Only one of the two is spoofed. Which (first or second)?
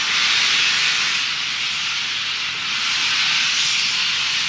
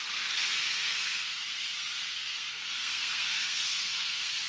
second